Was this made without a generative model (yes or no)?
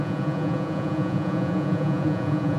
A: no